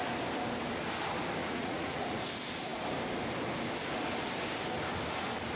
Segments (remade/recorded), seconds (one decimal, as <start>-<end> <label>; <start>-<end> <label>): 0.0-1.4 recorded; 1.4-2.2 remade; 2.2-5.6 recorded